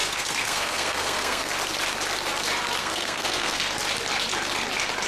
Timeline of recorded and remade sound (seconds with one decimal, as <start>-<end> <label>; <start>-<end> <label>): 0.0-1.5 remade; 1.5-2.8 recorded; 2.8-3.6 remade; 3.6-5.1 recorded